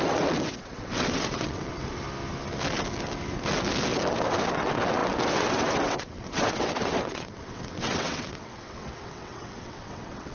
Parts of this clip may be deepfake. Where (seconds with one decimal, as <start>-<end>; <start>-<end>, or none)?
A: 0.0-2.0; 4.1-10.3